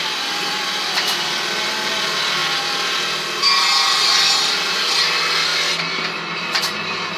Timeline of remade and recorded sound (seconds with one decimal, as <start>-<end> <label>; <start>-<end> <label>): 0.0-7.2 recorded

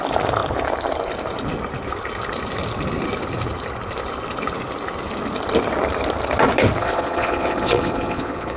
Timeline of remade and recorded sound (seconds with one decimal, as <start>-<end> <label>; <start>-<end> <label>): 0.0-6.8 recorded; 6.8-8.6 remade

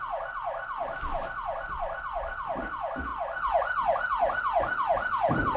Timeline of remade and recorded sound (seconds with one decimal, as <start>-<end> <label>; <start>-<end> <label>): 0.0-5.6 recorded

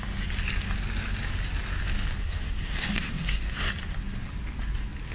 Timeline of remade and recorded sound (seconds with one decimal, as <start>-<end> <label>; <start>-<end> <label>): 0.0-2.2 recorded; 2.2-3.6 remade; 3.6-5.1 recorded

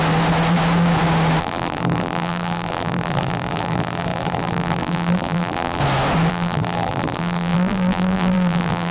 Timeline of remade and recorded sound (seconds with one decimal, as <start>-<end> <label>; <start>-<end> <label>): 0.0-1.4 recorded; 1.4-5.8 remade; 5.8-6.3 recorded; 6.3-8.9 remade

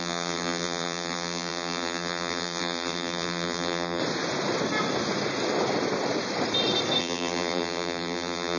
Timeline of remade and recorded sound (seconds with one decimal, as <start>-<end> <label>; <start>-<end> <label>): 0.0-4.0 remade; 4.0-7.0 recorded; 7.0-8.6 remade